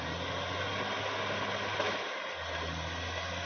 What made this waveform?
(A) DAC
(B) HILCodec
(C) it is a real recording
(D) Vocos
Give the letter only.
C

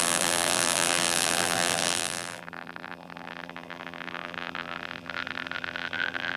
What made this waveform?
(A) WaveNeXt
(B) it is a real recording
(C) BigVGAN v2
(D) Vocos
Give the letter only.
C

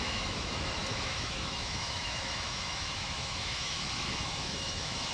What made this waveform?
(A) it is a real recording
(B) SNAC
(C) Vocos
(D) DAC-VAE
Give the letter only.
D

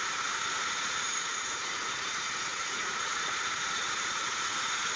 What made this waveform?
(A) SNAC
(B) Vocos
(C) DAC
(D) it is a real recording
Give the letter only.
B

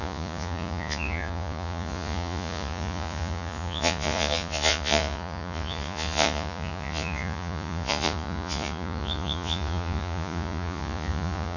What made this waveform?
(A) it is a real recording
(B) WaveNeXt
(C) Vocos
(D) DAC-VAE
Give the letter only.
C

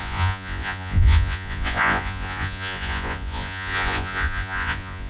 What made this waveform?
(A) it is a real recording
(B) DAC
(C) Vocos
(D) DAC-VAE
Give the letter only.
C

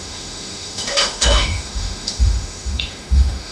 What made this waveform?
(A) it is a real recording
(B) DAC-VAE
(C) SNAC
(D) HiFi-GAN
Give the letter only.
B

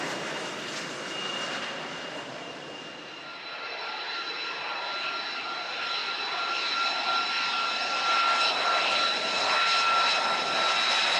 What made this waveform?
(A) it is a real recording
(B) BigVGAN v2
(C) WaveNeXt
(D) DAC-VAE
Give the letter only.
A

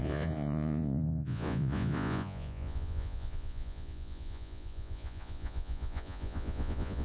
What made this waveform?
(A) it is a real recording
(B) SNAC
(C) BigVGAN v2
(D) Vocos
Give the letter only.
D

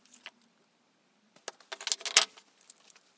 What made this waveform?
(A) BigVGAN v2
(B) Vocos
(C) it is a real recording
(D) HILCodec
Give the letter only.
C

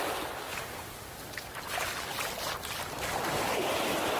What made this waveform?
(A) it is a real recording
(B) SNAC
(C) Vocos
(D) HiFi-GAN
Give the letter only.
A